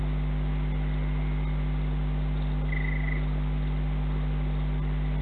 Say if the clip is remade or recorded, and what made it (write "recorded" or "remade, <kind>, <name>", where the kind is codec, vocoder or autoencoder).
recorded